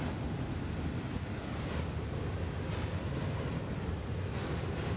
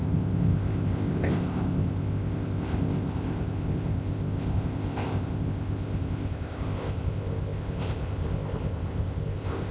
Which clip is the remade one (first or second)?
second